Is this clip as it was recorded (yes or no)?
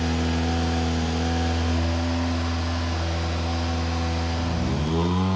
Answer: yes